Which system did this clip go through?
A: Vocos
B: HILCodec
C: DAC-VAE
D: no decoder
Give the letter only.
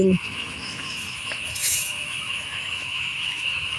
C